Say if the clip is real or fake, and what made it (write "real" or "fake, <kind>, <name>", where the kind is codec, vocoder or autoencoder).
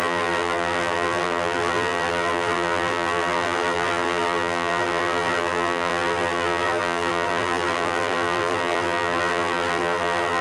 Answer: fake, vocoder, BigVGAN v2